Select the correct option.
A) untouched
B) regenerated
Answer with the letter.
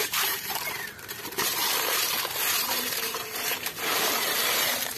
B